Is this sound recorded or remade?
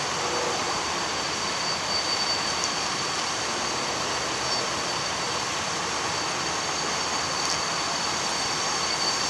recorded